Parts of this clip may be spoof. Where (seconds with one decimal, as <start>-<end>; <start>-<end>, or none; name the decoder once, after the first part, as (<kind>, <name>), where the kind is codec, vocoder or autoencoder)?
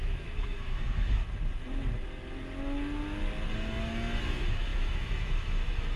0.0-1.2 (autoencoder, DAC-VAE); 4.2-6.0